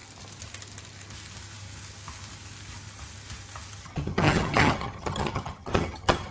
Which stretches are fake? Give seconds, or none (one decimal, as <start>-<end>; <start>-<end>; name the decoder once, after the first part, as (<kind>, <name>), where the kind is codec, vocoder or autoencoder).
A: 3.8-6.3 (vocoder, HiFi-GAN)